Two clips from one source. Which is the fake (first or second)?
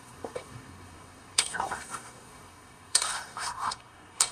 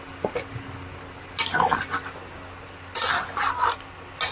first